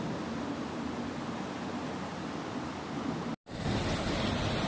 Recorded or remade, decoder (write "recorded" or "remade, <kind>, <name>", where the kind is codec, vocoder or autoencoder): recorded